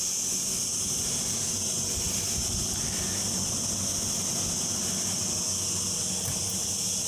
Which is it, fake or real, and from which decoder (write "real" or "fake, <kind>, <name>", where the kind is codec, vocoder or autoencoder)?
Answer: real